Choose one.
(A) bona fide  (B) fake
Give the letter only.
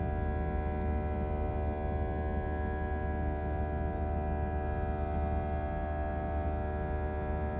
A